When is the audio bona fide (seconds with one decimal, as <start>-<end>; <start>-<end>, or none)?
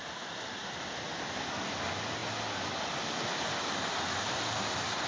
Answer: 0.0-5.1